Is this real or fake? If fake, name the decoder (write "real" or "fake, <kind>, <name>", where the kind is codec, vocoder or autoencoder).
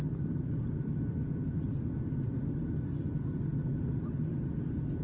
real